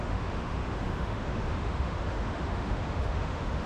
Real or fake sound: fake